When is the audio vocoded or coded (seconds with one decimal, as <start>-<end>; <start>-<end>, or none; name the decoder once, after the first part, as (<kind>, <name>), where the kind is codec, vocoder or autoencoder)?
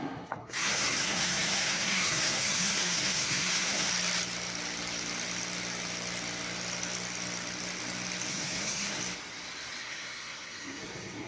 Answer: 0.0-3.9 (codec, SNAC); 8.3-9.0; 9.8-11.3